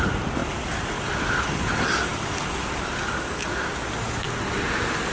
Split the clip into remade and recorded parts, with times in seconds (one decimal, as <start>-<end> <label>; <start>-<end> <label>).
0.0-5.1 recorded